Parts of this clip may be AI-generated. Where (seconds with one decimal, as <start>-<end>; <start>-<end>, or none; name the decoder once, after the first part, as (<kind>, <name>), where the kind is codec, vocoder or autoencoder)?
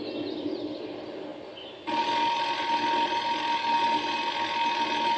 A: none